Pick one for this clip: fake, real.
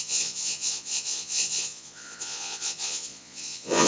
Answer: fake